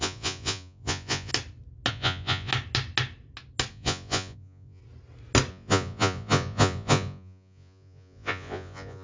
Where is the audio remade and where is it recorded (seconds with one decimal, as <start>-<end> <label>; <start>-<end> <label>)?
0.0-1.3 remade; 1.3-1.9 recorded; 1.9-2.5 remade; 2.5-3.7 recorded; 3.7-4.8 remade; 4.8-5.5 recorded; 5.5-9.0 remade